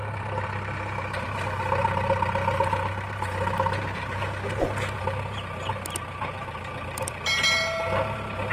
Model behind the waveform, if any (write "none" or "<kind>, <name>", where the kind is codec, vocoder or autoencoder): vocoder, BigVGAN v2